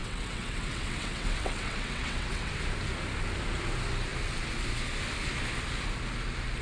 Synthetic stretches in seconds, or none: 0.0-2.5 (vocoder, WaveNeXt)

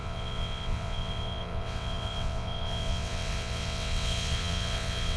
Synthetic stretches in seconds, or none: 0.0-5.2 (vocoder, WaveNeXt)